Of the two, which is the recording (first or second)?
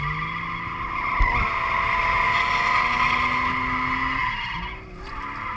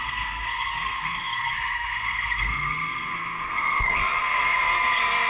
first